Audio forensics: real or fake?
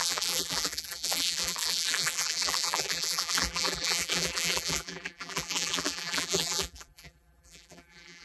fake